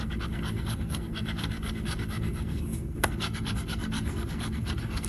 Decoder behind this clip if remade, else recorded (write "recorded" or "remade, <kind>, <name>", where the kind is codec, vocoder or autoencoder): remade, codec, SNAC